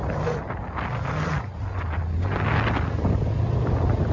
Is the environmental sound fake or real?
real